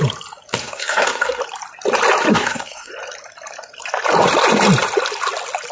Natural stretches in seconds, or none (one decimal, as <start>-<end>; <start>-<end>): 0.0-0.6; 1.4-2.3; 2.9-5.7